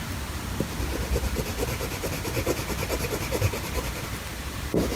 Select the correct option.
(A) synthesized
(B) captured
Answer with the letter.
B